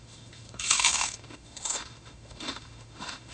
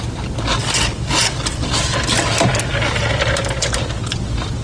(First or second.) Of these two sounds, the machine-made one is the first